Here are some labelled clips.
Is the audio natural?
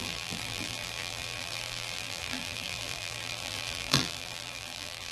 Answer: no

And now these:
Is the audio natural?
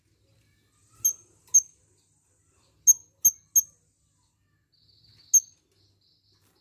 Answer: yes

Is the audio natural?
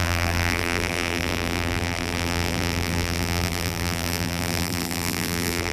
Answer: no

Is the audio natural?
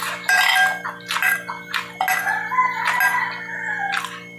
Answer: yes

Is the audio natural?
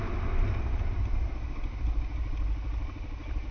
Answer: yes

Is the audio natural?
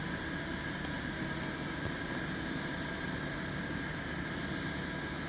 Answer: yes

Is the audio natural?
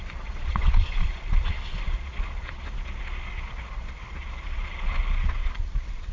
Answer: no